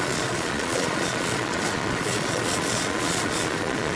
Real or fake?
fake